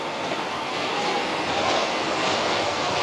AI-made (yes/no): yes